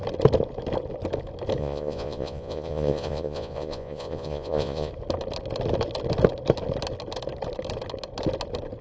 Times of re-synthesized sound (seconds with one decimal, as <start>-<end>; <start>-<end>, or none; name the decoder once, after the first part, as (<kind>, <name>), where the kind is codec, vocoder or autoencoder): 1.6-4.9 (vocoder, Vocos)